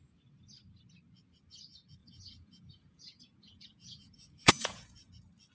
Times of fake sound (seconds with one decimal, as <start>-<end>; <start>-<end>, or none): 2.0-5.1